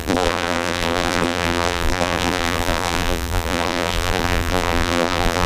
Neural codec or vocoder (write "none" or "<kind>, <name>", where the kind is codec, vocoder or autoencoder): vocoder, BigVGAN v2